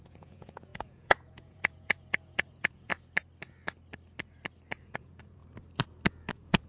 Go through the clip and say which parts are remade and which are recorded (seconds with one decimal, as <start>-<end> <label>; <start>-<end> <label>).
0.0-2.9 remade; 2.9-4.8 recorded; 4.8-5.4 remade; 5.4-6.3 recorded; 6.3-6.7 remade